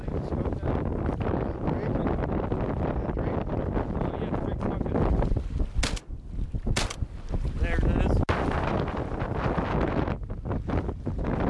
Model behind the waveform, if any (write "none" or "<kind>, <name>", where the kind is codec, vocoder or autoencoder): none